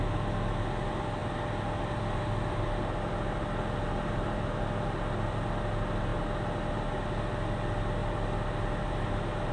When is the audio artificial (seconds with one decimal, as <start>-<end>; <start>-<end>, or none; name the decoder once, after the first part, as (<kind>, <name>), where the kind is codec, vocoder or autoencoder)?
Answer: none